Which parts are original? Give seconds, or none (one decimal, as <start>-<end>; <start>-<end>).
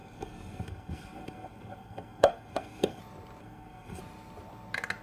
3.0-3.4; 4.0-5.0